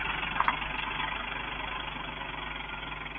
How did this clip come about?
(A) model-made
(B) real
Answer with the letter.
B